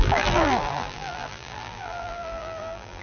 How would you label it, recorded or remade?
remade